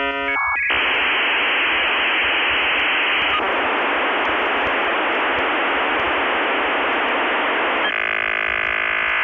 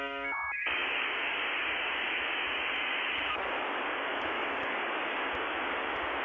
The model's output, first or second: second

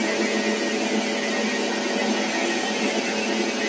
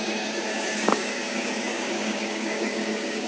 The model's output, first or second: second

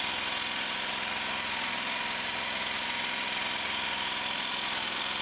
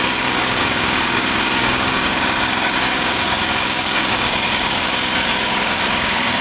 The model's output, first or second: second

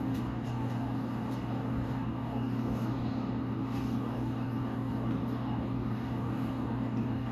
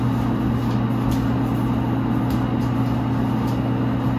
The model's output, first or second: first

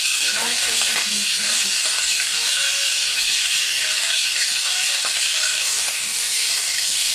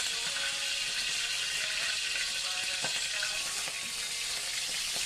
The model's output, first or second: first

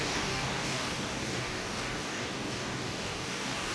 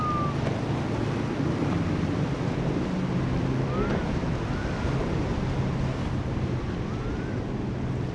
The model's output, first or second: first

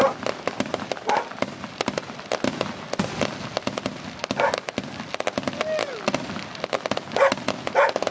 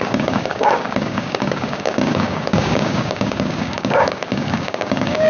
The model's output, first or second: second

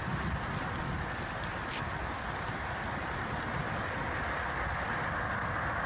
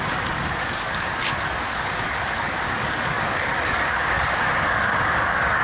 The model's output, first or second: second